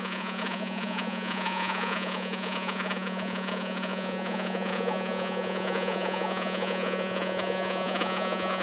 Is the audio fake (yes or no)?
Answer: yes